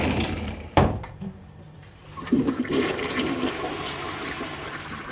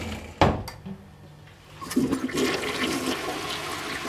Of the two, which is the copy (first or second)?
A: first